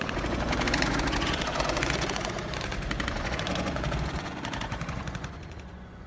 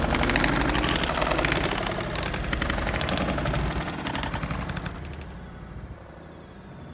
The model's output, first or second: first